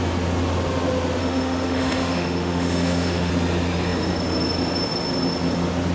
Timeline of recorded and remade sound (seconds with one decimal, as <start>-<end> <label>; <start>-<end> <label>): 0.0-1.2 recorded; 1.2-3.3 remade; 3.3-5.9 recorded

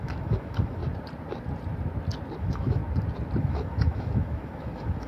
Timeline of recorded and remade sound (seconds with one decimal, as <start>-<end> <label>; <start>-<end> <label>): 0.0-0.8 remade; 0.8-2.4 recorded; 2.4-2.8 remade; 2.8-3.4 recorded; 3.4-5.1 remade

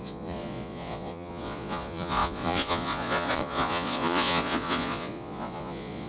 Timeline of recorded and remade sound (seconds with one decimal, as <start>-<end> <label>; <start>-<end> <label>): 0.0-6.1 remade

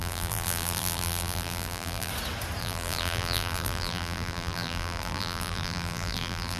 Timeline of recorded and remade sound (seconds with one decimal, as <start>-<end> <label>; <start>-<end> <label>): 0.0-2.1 remade; 2.1-2.6 recorded; 2.6-6.6 remade

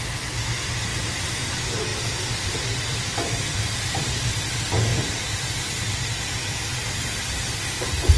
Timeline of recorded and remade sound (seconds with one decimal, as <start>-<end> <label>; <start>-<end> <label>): 0.0-0.9 recorded; 0.9-1.5 remade; 1.5-1.9 recorded; 1.9-4.4 remade; 4.4-4.9 recorded; 4.9-5.7 remade; 5.7-8.2 recorded